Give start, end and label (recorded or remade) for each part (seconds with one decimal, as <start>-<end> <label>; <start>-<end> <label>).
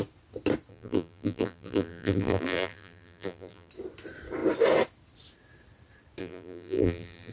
0.0-0.7 recorded; 0.7-3.7 remade; 3.7-6.2 recorded; 6.2-7.3 remade